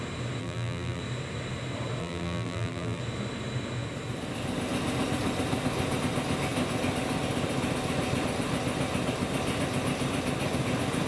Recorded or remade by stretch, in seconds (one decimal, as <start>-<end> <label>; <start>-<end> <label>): 0.0-0.4 recorded; 0.4-1.0 remade; 1.0-2.0 recorded; 2.0-3.0 remade; 3.0-11.1 recorded

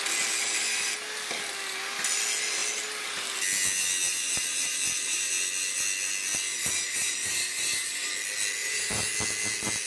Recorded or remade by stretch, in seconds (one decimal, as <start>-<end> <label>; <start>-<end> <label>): 0.0-4.2 recorded; 4.2-5.3 remade; 5.3-6.5 recorded; 6.5-8.1 remade; 8.1-8.6 recorded; 8.6-9.1 remade; 9.1-9.9 recorded